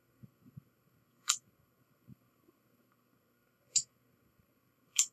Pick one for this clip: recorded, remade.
remade